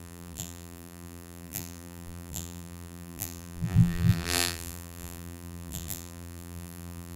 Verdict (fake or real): fake